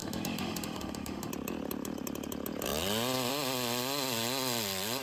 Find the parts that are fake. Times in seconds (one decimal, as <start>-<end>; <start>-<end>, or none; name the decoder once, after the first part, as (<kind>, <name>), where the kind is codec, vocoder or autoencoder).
0.0-1.3 (autoencoder, DAC-VAE)